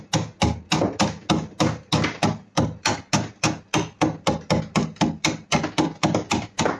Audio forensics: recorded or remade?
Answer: recorded